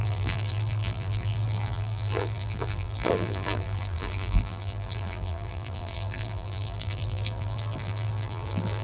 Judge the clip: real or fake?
fake